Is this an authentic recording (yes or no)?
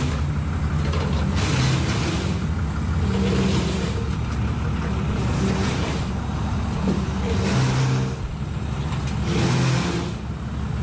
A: yes